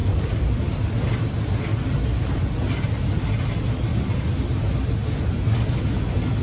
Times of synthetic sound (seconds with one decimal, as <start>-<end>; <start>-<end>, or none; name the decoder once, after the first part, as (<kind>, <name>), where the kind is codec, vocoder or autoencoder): 0.0-0.8 (vocoder, BigVGAN v2)